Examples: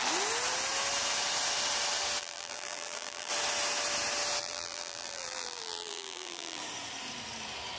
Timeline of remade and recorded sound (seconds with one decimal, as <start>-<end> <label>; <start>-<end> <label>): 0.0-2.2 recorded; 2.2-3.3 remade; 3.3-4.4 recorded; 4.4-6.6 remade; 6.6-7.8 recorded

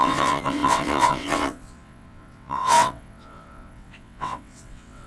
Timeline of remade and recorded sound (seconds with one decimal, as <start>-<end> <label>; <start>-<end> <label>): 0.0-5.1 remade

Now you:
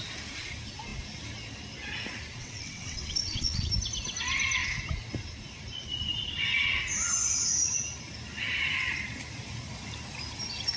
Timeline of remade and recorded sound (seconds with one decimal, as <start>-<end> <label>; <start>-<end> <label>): 0.0-2.4 recorded; 2.4-3.7 remade; 3.7-10.8 recorded

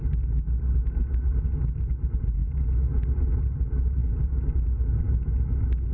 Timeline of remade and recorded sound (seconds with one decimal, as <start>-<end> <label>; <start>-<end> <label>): 0.0-5.9 recorded

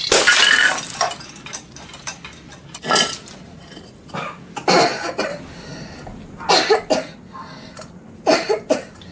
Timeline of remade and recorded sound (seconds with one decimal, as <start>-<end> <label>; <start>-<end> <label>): 0.0-9.1 recorded